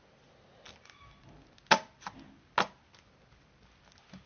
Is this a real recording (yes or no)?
yes